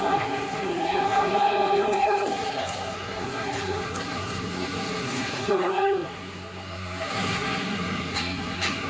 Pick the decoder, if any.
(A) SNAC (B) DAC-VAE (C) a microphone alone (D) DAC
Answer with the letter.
A